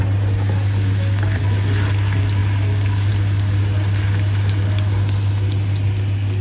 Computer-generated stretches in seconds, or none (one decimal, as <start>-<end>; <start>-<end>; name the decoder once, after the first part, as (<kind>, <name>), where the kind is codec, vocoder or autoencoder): none